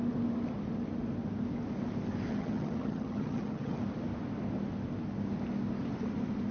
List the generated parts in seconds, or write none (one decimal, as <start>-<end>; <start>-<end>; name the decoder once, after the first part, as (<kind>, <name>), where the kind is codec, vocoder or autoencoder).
2.3-3.8 (vocoder, HiFi-GAN)